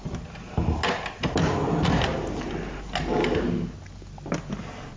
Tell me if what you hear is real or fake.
real